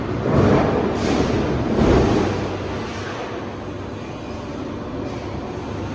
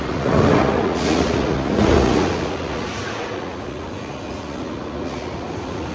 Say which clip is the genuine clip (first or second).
first